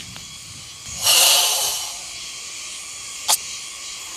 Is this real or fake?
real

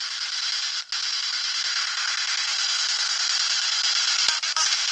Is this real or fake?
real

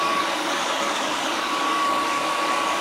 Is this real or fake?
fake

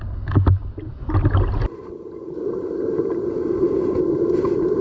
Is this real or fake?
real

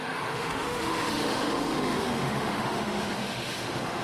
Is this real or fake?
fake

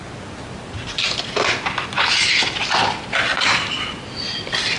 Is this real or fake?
real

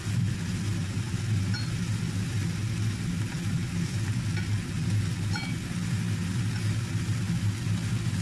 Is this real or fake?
real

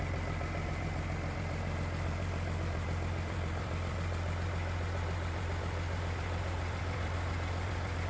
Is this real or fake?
fake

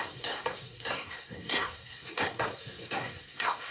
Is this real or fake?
fake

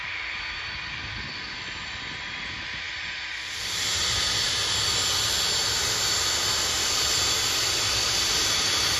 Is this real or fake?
real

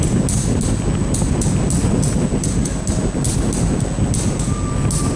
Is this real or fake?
real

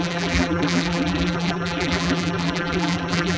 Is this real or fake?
fake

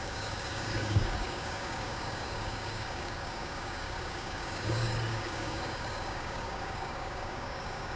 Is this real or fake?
fake